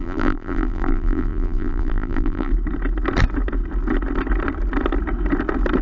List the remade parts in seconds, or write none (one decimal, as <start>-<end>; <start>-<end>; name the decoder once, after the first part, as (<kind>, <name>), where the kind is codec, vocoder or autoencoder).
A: 0.0-2.5 (vocoder, BigVGAN v2)